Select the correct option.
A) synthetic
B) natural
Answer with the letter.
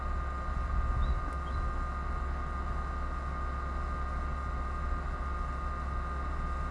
B